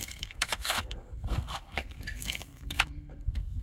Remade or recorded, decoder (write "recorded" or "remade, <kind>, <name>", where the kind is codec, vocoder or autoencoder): remade, codec, SNAC